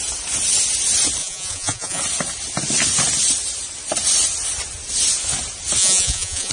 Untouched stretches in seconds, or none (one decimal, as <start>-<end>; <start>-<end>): 0.0-1.2; 2.0-5.8